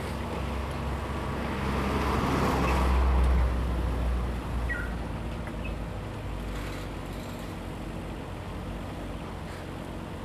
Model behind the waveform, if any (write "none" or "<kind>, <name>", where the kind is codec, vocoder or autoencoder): none